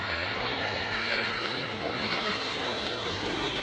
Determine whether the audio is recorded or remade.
remade